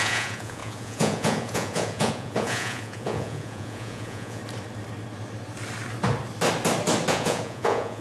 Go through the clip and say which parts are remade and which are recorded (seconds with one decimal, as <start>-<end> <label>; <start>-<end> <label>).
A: 0.0-4.4 remade; 4.4-7.1 recorded; 7.1-8.0 remade